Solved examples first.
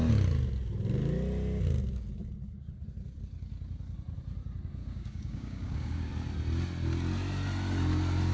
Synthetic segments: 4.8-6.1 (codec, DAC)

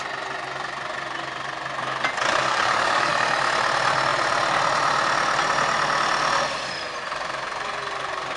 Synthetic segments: 2.4-3.1 (codec, DAC)

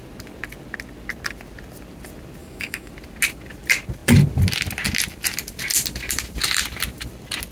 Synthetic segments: 2.4-2.9 (codec, DAC)

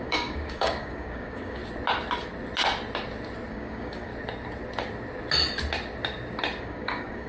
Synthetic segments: 0.0-1.6 (codec, DAC); 3.5-4.1; 6.6-7.3

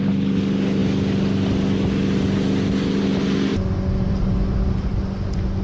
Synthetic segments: none

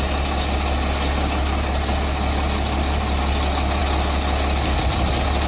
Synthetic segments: none

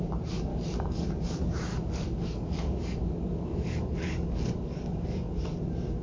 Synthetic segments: 0.5-1.2 (codec, DAC); 1.7-5.3

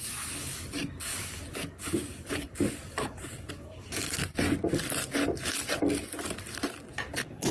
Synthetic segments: 0.0-4.2 (codec, DAC); 6.9-7.5